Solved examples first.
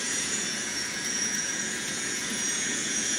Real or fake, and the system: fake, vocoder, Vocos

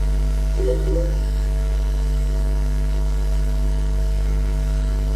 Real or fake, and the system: fake, codec, SNAC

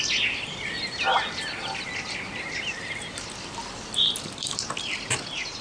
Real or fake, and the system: real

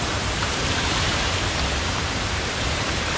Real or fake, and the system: fake, vocoder, BigVGAN v2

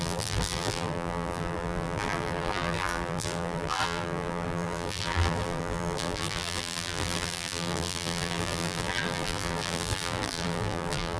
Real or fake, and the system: fake, vocoder, BigVGAN v2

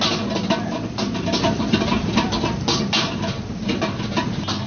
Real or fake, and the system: real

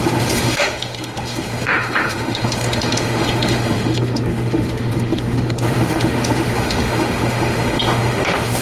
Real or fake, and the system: fake, autoencoder, DAC-VAE